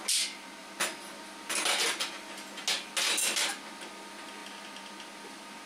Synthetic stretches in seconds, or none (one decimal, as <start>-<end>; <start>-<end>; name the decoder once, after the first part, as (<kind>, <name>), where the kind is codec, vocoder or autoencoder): none

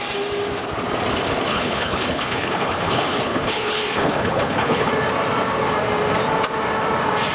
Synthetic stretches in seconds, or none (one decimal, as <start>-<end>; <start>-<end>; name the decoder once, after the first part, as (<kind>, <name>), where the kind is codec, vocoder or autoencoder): 1.5-4.9 (codec, HILCodec)

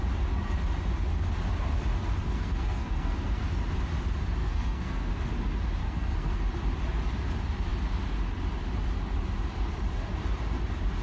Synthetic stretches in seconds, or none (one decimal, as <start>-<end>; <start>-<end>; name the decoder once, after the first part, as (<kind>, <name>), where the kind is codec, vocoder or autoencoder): 2.2-3.4 (codec, SNAC); 4.4-5.1; 5.8-6.4

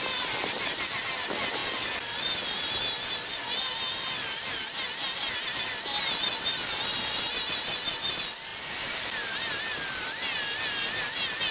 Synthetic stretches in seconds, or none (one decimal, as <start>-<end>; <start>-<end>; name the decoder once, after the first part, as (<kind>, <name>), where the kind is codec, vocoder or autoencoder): none

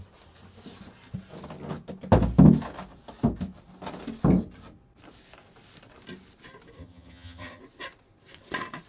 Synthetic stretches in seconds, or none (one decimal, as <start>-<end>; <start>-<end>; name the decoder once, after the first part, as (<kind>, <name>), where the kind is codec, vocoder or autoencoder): 6.8-7.6 (vocoder, HiFi-GAN)

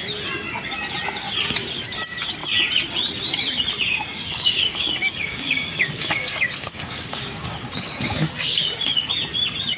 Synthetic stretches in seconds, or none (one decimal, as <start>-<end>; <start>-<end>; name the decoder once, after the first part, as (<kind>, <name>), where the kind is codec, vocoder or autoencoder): 4.1-9.1 (codec, DAC)

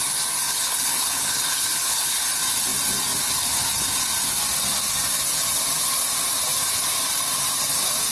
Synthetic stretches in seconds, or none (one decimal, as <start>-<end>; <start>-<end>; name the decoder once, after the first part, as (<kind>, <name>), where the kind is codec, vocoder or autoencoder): 0.5-2.2 (codec, HILCodec)